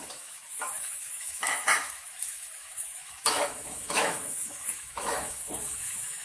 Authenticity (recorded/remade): remade